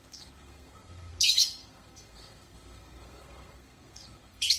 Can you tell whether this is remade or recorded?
remade